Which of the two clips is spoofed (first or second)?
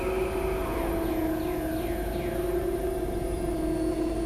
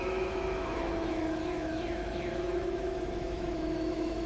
second